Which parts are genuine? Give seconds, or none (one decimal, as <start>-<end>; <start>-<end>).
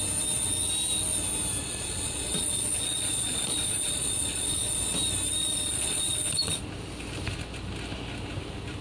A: 0.0-1.6; 4.8-5.4; 6.6-8.8